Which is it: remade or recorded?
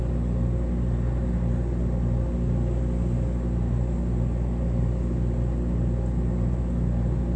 recorded